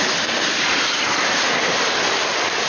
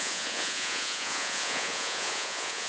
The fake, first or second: second